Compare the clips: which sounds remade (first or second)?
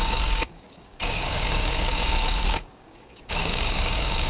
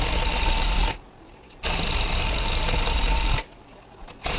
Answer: first